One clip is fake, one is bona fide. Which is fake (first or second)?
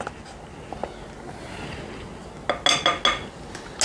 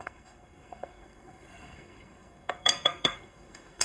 second